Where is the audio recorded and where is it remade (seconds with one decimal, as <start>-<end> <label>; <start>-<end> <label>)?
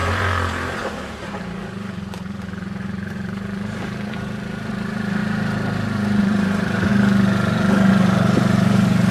0.0-5.2 remade; 5.2-6.2 recorded; 6.2-6.9 remade; 6.9-7.9 recorded; 7.9-9.1 remade